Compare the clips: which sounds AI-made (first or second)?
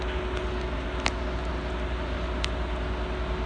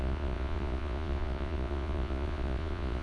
second